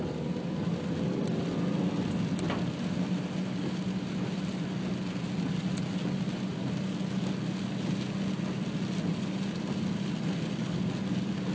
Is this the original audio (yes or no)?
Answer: yes